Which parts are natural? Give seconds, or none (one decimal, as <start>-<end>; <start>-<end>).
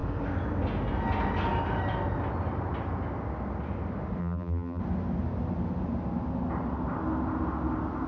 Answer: 0.0-4.2; 4.8-8.1